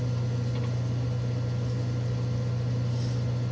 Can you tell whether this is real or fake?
real